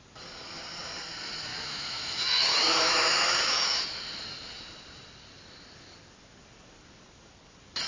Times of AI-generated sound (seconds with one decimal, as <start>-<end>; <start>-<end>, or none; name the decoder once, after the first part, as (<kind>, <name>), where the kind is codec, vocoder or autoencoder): 1.5-3.8 (autoencoder, DAC-VAE)

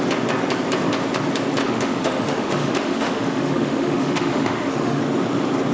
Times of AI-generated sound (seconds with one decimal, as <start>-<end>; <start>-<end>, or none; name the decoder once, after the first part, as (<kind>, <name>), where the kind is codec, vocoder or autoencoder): 1.6-5.0 (autoencoder, DAC-VAE)